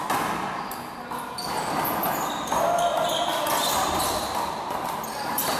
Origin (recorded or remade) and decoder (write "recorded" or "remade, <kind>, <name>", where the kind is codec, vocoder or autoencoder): recorded